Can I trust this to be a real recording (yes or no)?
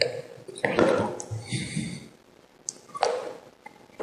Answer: yes